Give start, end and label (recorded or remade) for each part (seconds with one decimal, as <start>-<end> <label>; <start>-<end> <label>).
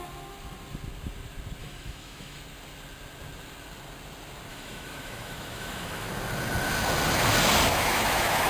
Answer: 0.0-1.6 recorded; 1.6-2.4 remade; 2.4-4.5 recorded; 4.5-6.1 remade; 6.1-7.7 recorded; 7.7-8.5 remade